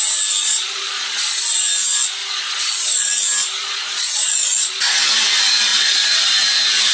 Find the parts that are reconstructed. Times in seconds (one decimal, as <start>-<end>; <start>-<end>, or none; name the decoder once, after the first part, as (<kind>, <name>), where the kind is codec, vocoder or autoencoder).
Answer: 0.4-1.5 (vocoder, Vocos); 2.2-3.1; 3.6-4.9; 5.7-6.3